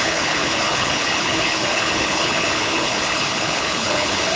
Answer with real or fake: fake